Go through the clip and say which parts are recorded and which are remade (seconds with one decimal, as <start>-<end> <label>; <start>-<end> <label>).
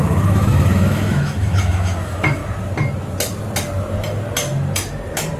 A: 0.0-2.4 remade; 2.4-5.4 recorded